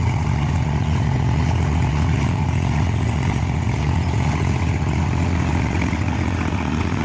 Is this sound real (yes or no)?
no